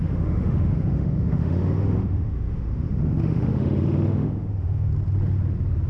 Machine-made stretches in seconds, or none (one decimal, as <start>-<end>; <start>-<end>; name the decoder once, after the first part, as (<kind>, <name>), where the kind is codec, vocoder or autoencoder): 0.0-4.9 (autoencoder, DAC-VAE)